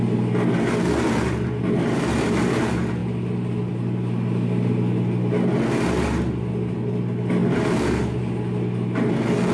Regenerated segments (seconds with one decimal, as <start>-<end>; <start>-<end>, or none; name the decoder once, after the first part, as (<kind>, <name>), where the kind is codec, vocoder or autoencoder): none